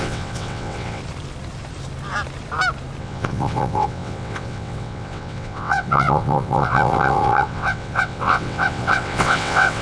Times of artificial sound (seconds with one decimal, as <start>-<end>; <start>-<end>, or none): 0.0-1.0; 3.0-9.8